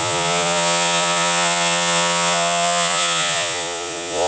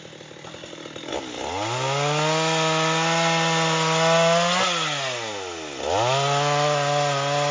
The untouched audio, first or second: second